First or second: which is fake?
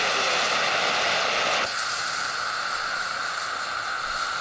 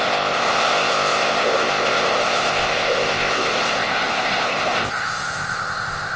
second